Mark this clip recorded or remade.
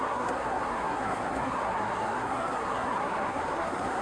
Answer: remade